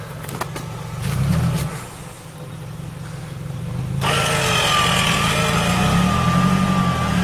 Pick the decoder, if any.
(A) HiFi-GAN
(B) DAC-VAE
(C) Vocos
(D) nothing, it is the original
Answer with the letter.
D